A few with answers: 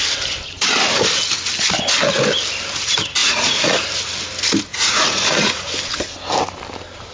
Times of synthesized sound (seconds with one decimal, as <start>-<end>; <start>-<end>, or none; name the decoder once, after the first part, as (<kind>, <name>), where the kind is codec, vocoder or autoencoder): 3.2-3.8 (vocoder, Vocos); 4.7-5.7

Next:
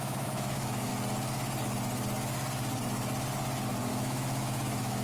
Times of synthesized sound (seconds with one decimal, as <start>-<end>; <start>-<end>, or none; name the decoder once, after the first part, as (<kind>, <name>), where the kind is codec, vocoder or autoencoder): 0.0-0.9 (autoencoder, DAC-VAE); 3.9-5.0

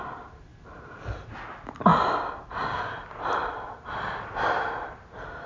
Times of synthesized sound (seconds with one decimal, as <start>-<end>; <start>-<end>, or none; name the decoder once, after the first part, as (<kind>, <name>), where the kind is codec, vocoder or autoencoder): 0.0-0.5 (vocoder, BigVGAN v2); 1.5-5.5

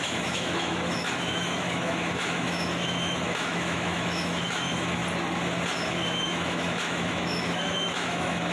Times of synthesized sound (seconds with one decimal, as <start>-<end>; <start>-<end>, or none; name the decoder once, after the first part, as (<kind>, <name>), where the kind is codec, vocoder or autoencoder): 0.0-5.0 (autoencoder, DAC-VAE); 5.9-8.5